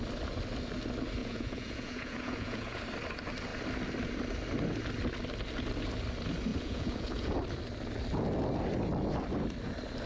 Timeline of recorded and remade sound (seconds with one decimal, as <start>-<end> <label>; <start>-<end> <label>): 0.0-1.2 recorded; 1.2-2.8 remade; 2.8-6.5 recorded; 6.5-7.3 remade; 7.3-10.1 recorded